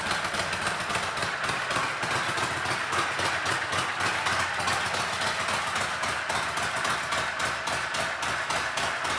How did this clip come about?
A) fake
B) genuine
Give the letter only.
B